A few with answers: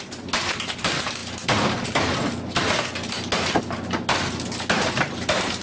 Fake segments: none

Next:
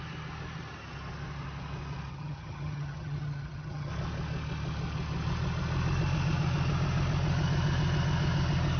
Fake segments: 2.1-3.9

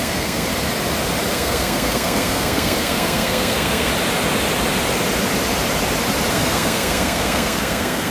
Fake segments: 0.0-0.5; 1.3-3.9; 6.3-8.1

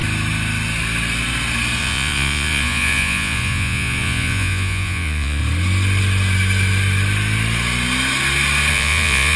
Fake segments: 1.8-5.4; 8.7-9.4